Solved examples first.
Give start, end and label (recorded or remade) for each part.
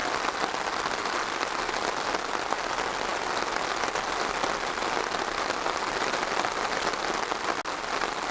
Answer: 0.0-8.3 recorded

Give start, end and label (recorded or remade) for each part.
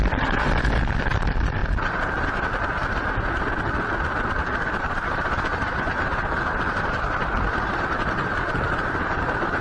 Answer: 0.0-1.6 remade; 1.6-4.8 recorded; 4.8-9.6 remade